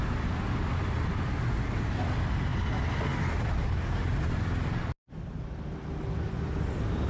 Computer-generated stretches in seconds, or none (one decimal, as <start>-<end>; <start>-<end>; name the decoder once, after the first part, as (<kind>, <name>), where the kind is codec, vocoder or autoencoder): none